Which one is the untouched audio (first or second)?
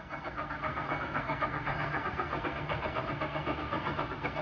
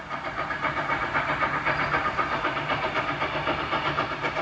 second